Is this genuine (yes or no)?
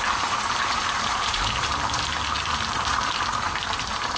no